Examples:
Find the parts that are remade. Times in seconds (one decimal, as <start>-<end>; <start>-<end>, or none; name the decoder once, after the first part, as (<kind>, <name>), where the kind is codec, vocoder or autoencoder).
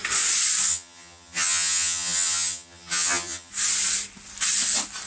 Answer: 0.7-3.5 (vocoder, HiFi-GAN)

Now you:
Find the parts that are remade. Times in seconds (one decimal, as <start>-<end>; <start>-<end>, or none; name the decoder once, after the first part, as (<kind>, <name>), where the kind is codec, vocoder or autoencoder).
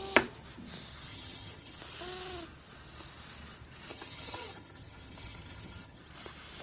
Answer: 1.1-1.8 (vocoder, HiFi-GAN); 3.9-6.0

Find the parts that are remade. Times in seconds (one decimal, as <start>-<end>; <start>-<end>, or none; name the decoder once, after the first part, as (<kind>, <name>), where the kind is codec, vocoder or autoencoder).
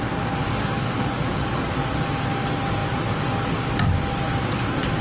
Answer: 0.4-1.7 (codec, DAC)